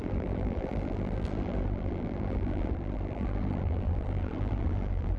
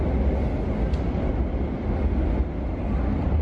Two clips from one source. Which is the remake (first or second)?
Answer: first